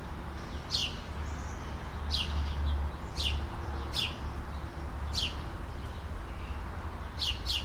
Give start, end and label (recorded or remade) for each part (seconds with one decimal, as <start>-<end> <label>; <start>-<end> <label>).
0.0-7.6 recorded